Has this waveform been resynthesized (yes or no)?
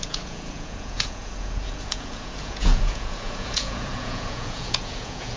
yes